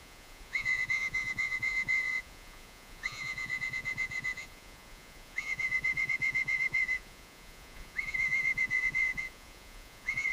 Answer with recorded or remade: remade